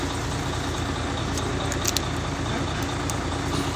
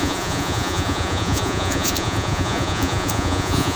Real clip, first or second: first